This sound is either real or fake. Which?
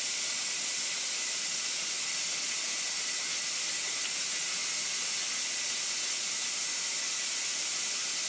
real